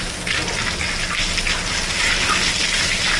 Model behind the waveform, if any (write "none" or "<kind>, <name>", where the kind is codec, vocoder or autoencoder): none